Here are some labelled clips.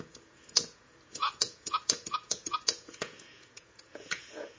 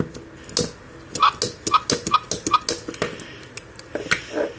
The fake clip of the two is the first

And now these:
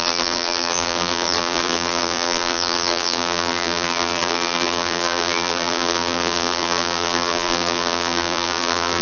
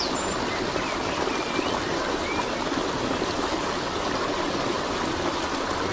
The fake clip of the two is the first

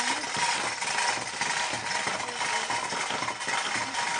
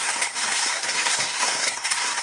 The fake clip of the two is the second